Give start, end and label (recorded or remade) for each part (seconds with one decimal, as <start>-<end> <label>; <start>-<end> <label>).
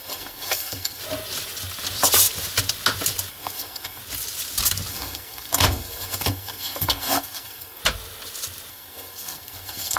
0.0-1.0 remade; 1.0-3.3 recorded; 3.3-4.0 remade; 4.0-4.9 recorded; 4.9-7.8 remade; 7.8-8.7 recorded; 8.7-10.0 remade